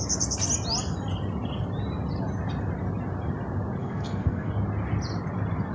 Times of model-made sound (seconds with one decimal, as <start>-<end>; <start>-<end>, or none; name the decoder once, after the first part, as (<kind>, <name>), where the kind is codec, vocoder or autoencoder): 3.8-4.5 (codec, SNAC)